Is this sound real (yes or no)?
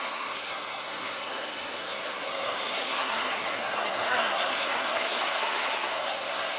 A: no